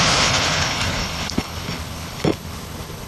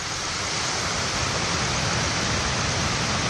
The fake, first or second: first